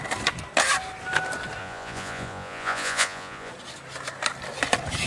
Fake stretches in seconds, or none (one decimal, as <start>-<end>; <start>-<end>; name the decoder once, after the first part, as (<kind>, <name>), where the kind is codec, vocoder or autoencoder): 1.6-3.5 (vocoder, Vocos)